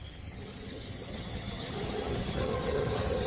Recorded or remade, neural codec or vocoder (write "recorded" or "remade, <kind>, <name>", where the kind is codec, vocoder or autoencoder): remade, vocoder, HiFi-GAN